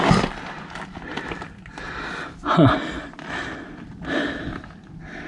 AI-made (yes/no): no